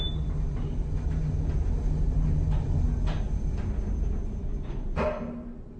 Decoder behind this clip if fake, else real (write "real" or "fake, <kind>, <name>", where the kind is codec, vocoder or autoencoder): real